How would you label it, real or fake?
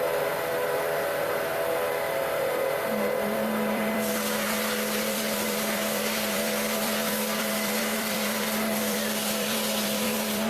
fake